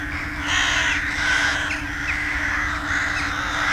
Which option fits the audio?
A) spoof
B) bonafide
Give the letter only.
B